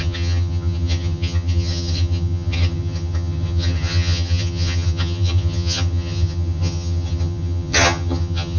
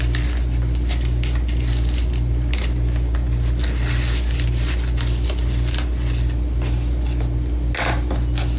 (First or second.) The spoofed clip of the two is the first